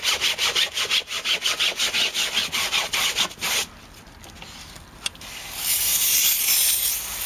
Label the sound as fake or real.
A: real